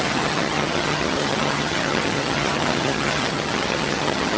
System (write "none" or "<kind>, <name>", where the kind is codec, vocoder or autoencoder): vocoder, HiFi-GAN